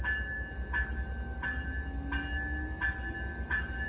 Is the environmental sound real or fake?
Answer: real